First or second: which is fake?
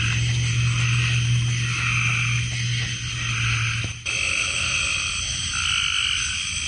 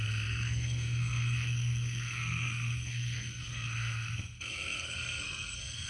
second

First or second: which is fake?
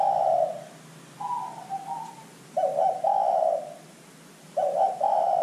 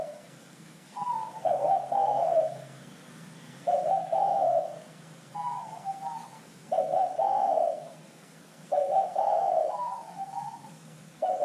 second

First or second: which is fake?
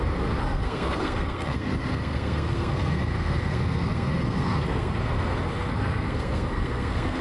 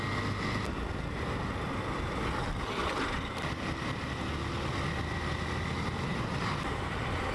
first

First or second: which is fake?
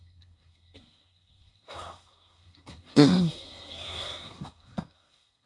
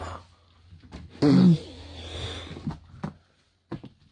first